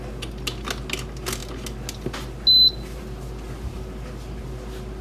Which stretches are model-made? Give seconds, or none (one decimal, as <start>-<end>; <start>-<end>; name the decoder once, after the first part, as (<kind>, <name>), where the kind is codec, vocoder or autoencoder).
none